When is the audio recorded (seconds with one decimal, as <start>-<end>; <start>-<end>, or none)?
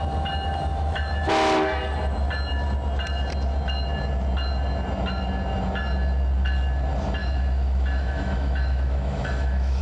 0.0-0.7; 1.3-7.2